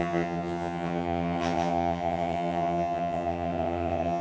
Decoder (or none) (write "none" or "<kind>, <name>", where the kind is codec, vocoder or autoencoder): vocoder, HiFi-GAN